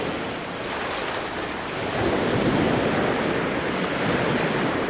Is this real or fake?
real